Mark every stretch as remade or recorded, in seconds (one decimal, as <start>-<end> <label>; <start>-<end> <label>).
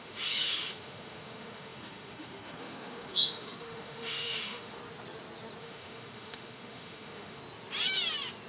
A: 0.0-4.8 remade; 4.8-5.6 recorded; 5.6-7.4 remade; 7.4-8.5 recorded